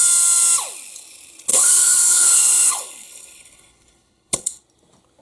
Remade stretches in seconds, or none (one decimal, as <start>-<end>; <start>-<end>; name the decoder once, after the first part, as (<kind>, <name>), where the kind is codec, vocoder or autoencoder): 1.5-4.6 (codec, HILCodec)